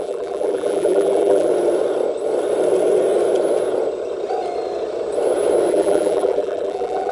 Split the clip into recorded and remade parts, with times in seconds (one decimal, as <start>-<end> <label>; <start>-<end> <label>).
0.0-1.5 remade; 1.5-5.7 recorded; 5.7-7.1 remade